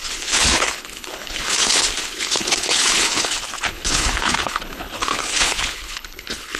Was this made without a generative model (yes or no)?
no